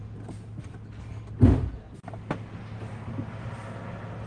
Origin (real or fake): real